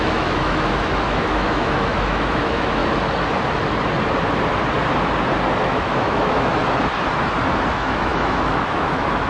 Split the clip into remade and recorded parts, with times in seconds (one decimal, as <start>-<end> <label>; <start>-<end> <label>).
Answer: 0.0-2.8 remade; 2.8-5.6 recorded; 5.6-6.6 remade; 6.6-7.7 recorded; 7.7-9.3 remade